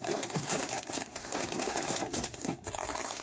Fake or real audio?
fake